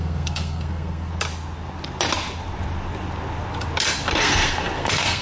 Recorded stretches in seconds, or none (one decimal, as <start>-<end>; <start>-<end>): 1.1-4.2